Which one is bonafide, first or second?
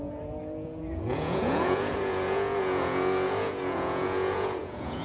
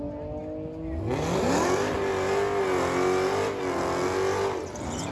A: second